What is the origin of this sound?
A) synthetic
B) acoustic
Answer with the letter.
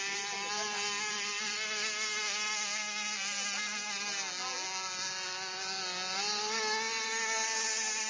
B